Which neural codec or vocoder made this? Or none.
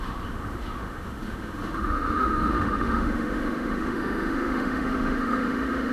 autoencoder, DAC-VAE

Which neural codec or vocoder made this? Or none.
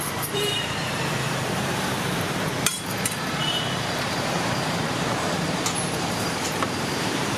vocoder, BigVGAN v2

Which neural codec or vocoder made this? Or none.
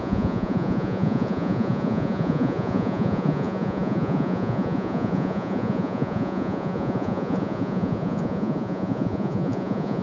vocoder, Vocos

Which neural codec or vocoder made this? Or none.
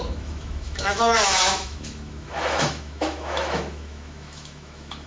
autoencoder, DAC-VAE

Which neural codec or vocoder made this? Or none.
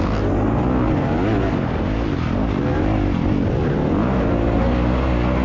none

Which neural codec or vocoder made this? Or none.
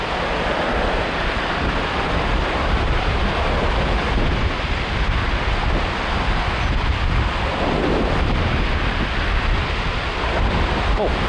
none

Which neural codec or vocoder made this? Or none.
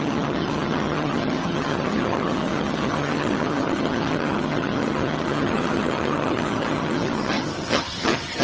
vocoder, HiFi-GAN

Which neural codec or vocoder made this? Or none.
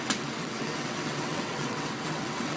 vocoder, WaveNeXt